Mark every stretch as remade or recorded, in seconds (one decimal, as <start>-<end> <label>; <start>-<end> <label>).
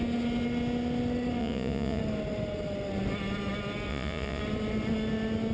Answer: 0.0-1.4 recorded; 1.4-2.0 remade; 2.0-3.9 recorded; 3.9-4.4 remade; 4.4-5.5 recorded